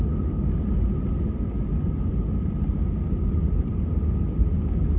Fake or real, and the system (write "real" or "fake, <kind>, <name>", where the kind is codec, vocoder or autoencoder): real